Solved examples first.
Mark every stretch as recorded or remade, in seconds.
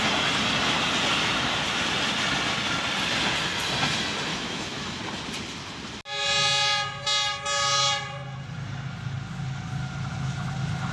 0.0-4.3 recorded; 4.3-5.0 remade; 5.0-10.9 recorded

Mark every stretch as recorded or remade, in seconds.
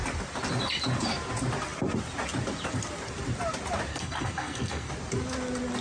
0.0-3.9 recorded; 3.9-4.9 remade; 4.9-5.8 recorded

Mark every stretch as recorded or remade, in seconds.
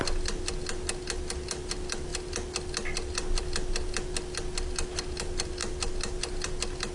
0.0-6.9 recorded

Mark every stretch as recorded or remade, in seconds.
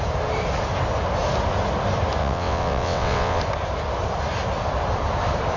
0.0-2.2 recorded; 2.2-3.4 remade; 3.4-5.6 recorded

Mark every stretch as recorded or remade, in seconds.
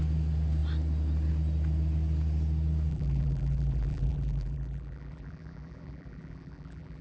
0.0-2.9 recorded; 2.9-7.0 remade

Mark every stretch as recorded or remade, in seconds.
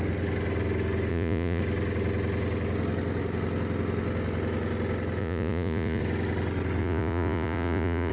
0.0-1.1 recorded; 1.1-1.6 remade; 1.6-5.2 recorded; 5.2-6.0 remade; 6.0-6.8 recorded; 6.8-8.1 remade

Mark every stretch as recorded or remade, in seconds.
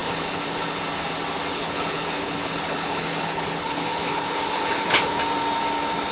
0.0-0.8 remade; 0.8-1.5 recorded; 1.5-5.2 remade; 5.2-6.1 recorded